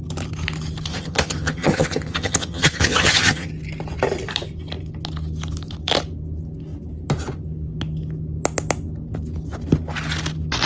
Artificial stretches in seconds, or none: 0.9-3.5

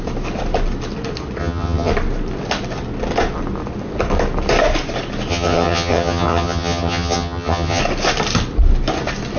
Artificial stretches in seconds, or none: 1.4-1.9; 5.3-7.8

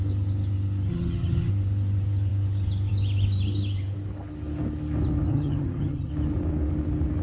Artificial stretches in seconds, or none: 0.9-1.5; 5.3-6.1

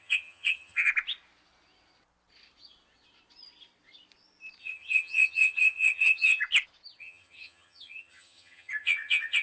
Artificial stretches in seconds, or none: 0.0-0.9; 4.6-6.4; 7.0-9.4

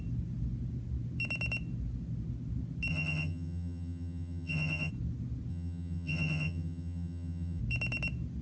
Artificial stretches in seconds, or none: 2.9-4.9; 5.5-7.6

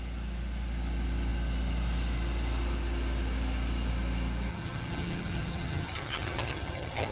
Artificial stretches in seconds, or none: 4.5-7.1